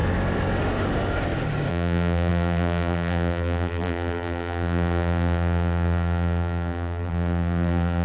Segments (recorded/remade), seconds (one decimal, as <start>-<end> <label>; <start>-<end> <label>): 0.0-1.7 recorded; 1.7-8.0 remade